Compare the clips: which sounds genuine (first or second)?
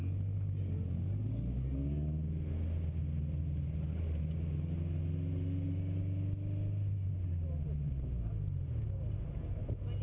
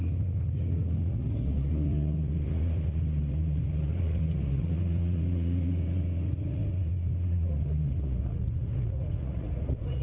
first